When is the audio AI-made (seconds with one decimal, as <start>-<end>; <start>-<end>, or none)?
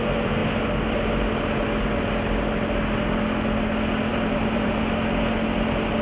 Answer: 4.1-4.8